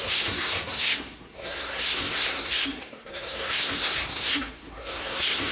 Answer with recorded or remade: remade